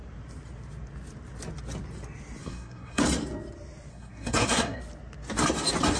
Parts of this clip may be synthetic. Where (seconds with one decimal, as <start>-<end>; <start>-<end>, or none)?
2.4-3.0; 3.9-4.8

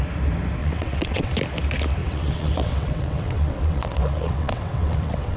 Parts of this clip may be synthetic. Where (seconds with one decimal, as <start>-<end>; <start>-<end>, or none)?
0.6-1.3; 2.0-5.4